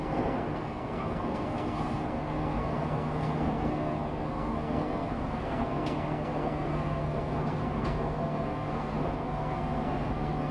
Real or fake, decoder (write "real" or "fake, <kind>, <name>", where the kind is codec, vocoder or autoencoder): fake, codec, SNAC